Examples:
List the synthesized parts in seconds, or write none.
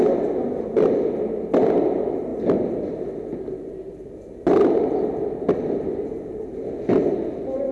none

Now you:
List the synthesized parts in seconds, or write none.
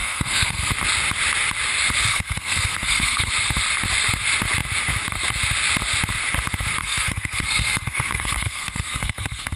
0.0-0.7 (codec, SNAC); 2.1-3.3; 6.8-9.6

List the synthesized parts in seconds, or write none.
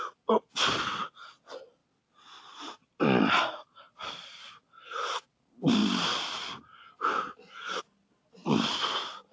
1.8-3.5 (vocoder, BigVGAN v2); 8.4-9.3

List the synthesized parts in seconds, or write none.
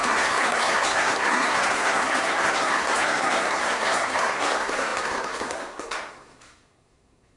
0.0-7.4 (codec, SNAC)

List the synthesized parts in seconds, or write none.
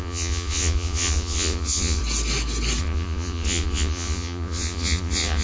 0.0-2.0 (vocoder, Vocos); 2.8-5.4